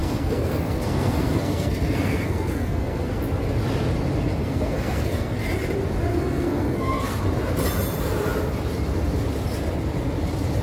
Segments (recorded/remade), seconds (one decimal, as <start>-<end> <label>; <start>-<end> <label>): 0.0-3.2 remade; 3.2-4.4 recorded; 4.4-5.4 remade; 5.4-6.1 recorded; 6.1-7.2 remade; 7.2-10.6 recorded